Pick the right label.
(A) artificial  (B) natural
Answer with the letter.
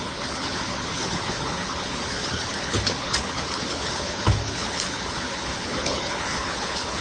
A